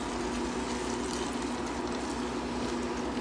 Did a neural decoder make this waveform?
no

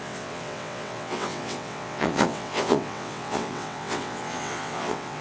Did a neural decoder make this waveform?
yes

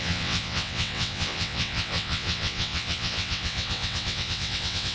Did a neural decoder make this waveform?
yes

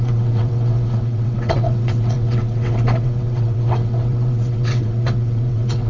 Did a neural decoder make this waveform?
yes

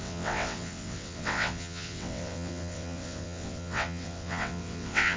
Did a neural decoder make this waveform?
yes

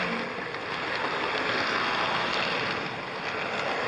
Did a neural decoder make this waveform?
no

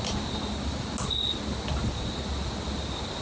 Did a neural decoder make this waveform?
no